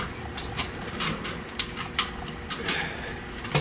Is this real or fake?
fake